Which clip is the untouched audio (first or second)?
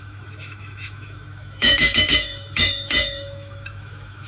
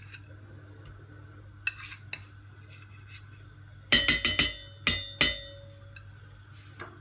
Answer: second